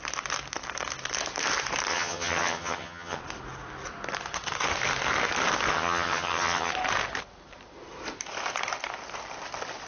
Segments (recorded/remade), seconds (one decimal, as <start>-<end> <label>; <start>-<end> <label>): 0.0-1.9 recorded; 1.9-3.2 remade; 3.2-5.7 recorded; 5.7-6.7 remade; 6.7-9.9 recorded